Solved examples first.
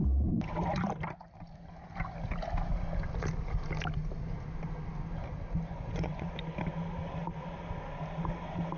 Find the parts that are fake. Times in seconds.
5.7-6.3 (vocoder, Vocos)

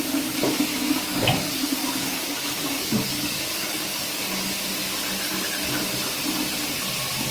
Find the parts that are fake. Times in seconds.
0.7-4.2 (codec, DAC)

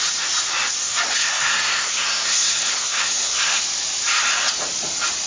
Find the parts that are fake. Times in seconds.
1.2-3.6 (codec, SNAC)

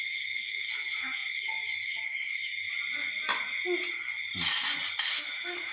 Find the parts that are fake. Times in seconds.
0.0-2.5 (autoencoder, DAC-VAE); 5.0-5.7

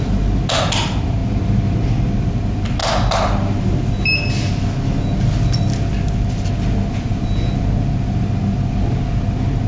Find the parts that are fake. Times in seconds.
none

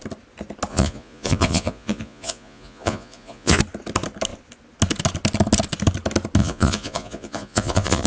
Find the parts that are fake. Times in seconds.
0.7-3.6 (vocoder, Vocos); 6.4-8.1

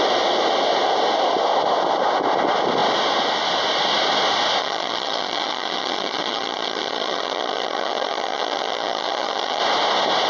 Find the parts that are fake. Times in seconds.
4.6-9.6 (vocoder, HiFi-GAN)